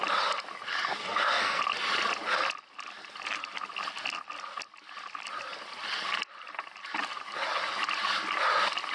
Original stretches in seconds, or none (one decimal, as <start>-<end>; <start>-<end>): 0.0-1.0; 1.6-8.9